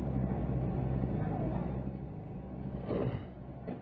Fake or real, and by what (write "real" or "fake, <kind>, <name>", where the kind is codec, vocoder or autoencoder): real